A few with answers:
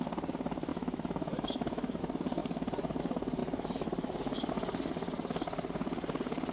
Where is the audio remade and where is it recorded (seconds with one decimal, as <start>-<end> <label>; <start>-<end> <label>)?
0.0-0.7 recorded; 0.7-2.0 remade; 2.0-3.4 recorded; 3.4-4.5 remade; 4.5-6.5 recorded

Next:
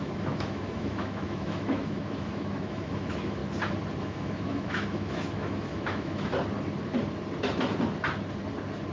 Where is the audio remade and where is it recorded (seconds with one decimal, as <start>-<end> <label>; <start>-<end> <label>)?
0.0-3.4 remade; 3.4-4.0 recorded; 4.0-6.3 remade; 6.3-8.9 recorded

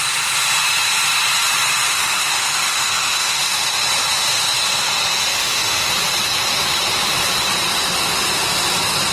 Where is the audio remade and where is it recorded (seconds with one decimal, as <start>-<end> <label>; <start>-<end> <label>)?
0.0-1.9 recorded; 1.9-3.8 remade; 3.8-5.3 recorded; 5.3-5.9 remade; 5.9-9.1 recorded

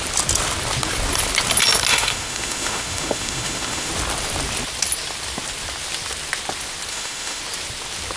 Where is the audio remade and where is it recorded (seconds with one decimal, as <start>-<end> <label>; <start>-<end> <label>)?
0.0-1.9 recorded; 1.9-3.9 remade; 3.9-6.9 recorded; 6.9-7.4 remade; 7.4-8.2 recorded